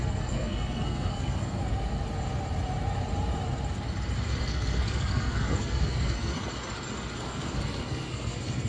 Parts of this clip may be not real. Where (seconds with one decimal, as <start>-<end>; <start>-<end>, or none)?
0.0-1.6; 4.4-6.3; 7.2-8.7